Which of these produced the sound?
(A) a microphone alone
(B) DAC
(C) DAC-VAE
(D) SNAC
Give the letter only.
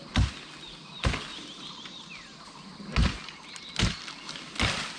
A